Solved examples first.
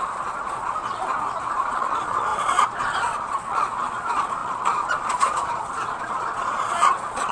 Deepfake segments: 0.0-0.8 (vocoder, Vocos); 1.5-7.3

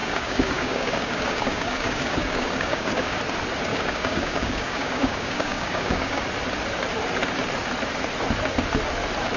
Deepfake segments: 0.0-3.2 (codec, DAC); 3.7-6.2